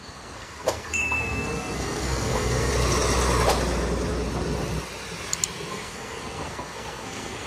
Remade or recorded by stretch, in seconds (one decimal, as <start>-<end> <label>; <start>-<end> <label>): 0.0-2.7 remade; 2.7-5.7 recorded; 5.7-7.5 remade